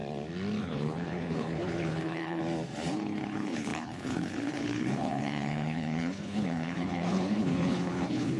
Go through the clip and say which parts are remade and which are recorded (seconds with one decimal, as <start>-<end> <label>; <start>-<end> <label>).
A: 0.0-0.6 recorded; 0.6-2.4 remade; 2.4-2.9 recorded; 2.9-8.4 remade